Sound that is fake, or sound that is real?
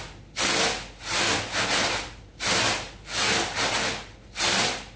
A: real